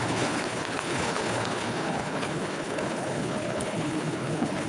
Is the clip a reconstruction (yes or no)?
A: yes